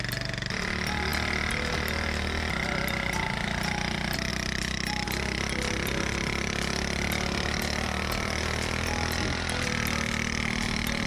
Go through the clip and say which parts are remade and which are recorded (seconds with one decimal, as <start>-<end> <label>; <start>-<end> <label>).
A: 0.0-11.1 recorded